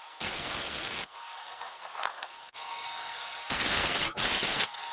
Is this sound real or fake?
fake